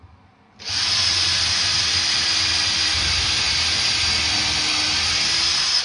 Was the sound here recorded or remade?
remade